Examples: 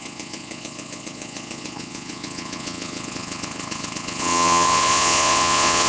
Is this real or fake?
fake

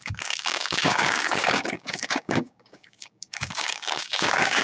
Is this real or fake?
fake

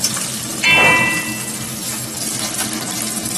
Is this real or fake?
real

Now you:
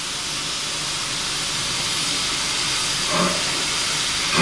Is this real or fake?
real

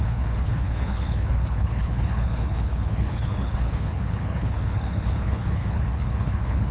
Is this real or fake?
fake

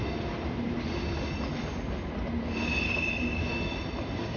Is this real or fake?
real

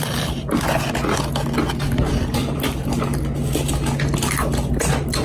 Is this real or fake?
real